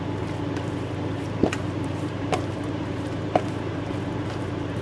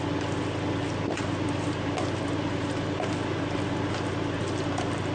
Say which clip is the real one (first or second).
second